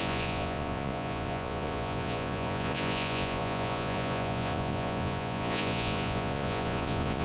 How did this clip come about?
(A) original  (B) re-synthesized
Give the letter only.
B